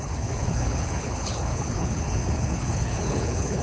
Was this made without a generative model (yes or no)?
no